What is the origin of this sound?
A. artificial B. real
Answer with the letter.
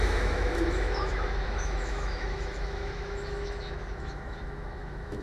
A